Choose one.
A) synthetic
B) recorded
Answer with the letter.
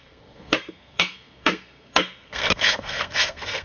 A